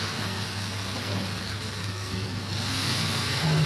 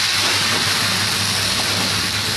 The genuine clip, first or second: second